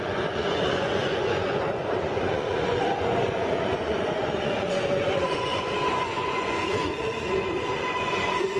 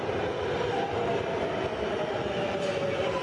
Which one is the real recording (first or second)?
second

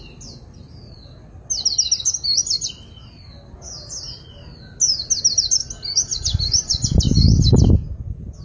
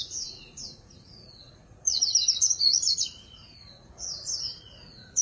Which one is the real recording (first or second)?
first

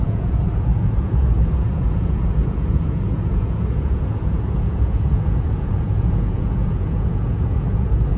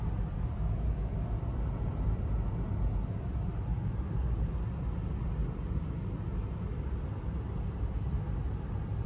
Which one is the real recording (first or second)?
second